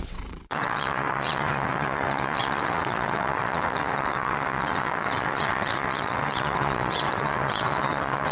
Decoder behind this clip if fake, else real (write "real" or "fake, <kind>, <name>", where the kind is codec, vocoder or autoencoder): fake, vocoder, WaveNeXt